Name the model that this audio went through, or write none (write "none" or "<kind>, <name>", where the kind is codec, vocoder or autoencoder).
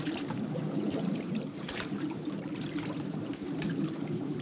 vocoder, BigVGAN v2